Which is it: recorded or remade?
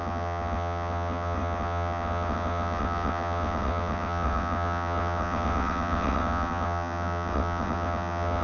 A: remade